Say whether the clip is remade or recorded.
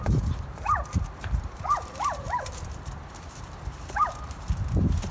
remade